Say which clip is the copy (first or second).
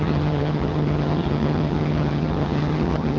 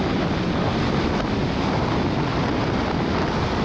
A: first